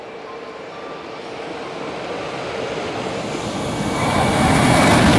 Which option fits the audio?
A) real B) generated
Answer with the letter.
A